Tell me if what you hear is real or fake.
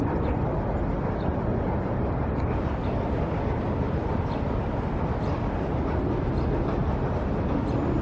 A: real